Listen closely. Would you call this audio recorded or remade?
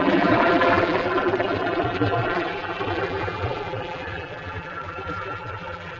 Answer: remade